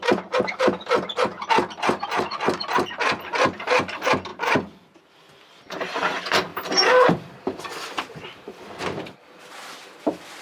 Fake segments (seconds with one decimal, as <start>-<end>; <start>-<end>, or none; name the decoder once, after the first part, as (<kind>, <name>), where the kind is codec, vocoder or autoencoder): 4.3-5.0 (vocoder, BigVGAN v2); 6.5-9.4